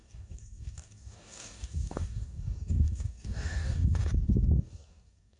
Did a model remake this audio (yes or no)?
yes